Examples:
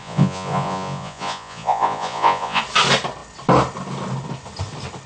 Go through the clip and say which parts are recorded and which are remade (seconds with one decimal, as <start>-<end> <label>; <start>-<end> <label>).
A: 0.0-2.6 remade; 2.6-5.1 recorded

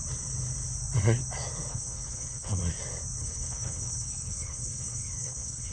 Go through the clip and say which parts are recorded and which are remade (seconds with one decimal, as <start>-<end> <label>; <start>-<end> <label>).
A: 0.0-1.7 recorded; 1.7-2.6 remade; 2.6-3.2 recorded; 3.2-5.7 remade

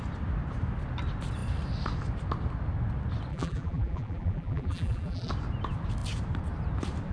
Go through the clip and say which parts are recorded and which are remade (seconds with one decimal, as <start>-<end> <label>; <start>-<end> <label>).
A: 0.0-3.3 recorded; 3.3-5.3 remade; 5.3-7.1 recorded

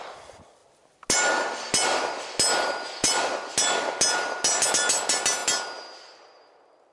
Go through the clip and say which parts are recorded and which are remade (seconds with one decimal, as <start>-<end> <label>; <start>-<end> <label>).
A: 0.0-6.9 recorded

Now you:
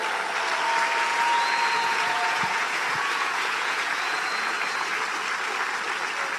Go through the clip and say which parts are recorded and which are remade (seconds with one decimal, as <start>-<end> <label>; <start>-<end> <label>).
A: 0.0-1.1 recorded; 1.1-4.9 remade; 4.9-6.4 recorded